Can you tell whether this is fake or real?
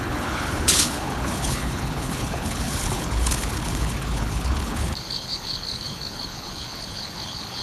fake